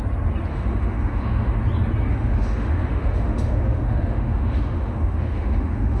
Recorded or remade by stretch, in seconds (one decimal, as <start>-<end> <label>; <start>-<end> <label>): 0.0-0.5 recorded; 0.5-1.6 remade; 1.6-2.1 recorded; 2.1-6.0 remade